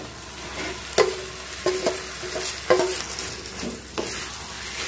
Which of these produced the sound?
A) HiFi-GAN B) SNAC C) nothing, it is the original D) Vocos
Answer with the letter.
C